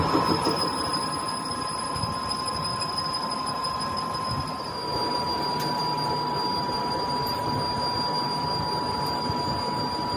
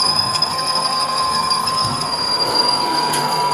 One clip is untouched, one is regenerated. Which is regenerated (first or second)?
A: second